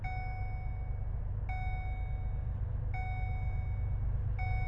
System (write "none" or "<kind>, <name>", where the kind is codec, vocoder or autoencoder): none